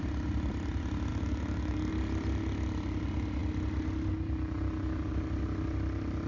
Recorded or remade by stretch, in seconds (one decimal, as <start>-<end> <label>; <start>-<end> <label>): 0.0-1.1 recorded; 1.1-1.9 remade; 1.9-6.3 recorded